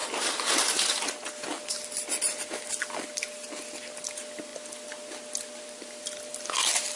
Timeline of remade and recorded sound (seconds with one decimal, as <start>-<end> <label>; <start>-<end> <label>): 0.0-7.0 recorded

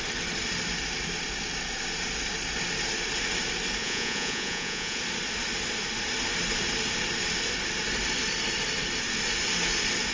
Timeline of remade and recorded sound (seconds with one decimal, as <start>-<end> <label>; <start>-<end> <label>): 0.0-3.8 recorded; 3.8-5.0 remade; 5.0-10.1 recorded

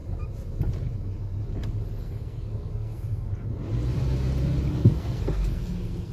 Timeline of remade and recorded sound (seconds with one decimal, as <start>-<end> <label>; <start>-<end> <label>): 0.0-2.0 recorded; 2.0-3.3 remade; 3.3-4.7 recorded; 4.7-6.1 remade